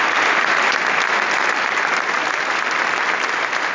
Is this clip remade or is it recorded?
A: recorded